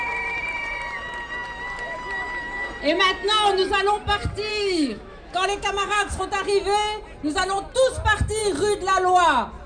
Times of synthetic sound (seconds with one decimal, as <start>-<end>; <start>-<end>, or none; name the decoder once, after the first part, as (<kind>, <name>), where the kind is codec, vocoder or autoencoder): 4.5-6.2 (autoencoder, DAC-VAE)